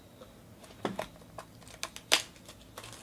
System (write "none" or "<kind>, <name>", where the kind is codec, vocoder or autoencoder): none